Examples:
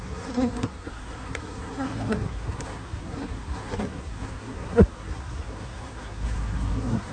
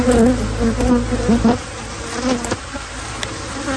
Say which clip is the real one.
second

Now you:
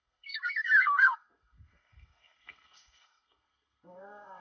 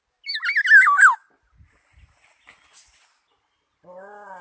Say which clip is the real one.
second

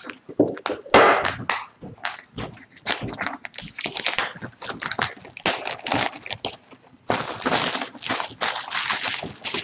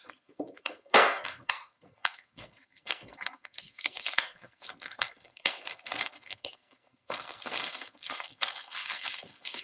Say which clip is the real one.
first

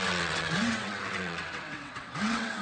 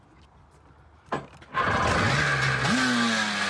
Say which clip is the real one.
second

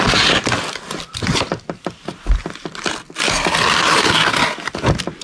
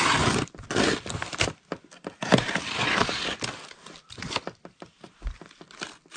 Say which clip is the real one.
first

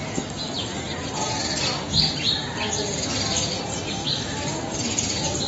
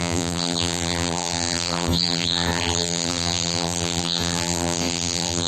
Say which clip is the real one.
first